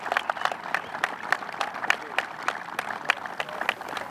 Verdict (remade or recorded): recorded